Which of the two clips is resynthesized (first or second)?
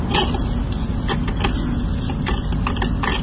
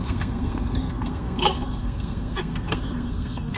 second